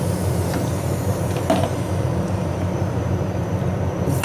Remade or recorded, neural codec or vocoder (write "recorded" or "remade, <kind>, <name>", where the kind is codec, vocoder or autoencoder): remade, vocoder, BigVGAN v2